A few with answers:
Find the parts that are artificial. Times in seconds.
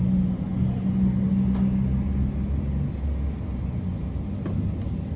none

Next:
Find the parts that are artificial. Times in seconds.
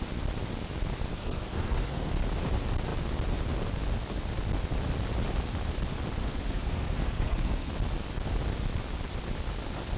1.1-2.1; 6.2-7.7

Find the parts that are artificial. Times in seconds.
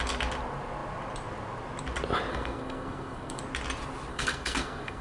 2.3-3.4; 4.1-5.0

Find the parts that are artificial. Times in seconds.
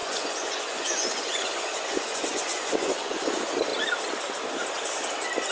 0.0-3.3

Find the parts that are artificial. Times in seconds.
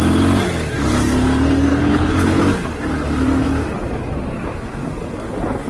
1.7-2.4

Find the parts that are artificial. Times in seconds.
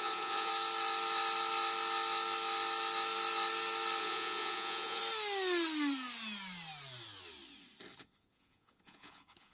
0.0-0.5; 4.0-5.0; 8.0-9.5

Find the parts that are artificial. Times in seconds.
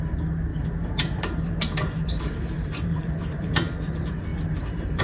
0.5-3.5; 4.3-5.0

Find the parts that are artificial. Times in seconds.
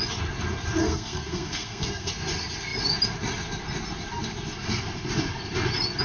0.8-2.1